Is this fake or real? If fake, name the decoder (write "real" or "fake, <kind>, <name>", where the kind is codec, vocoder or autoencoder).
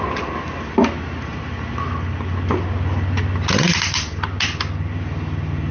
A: real